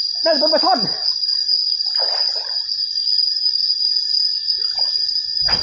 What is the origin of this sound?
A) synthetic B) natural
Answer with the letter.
B